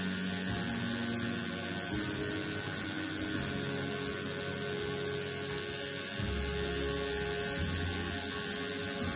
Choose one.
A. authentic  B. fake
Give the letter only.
A